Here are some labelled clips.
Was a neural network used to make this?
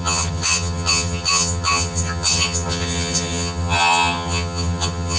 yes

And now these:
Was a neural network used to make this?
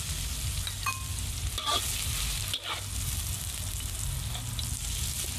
no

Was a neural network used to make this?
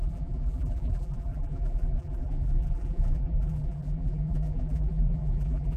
yes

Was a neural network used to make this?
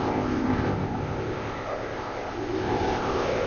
yes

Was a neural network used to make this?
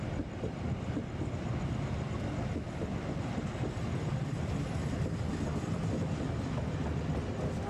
no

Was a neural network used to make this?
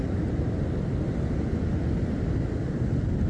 no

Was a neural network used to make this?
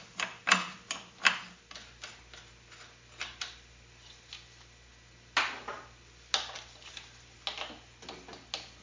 no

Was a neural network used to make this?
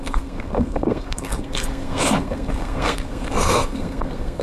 yes